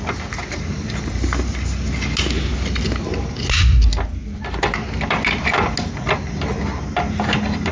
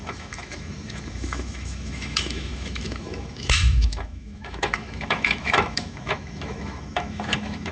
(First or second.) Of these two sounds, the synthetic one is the second